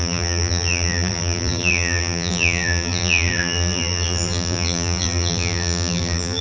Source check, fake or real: fake